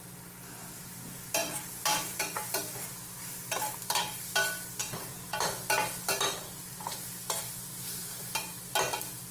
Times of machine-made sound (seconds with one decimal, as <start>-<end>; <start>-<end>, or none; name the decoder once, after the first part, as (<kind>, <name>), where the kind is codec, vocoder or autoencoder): 1.4-2.6 (vocoder, BigVGAN v2); 8.0-8.6